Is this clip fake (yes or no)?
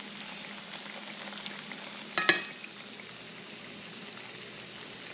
no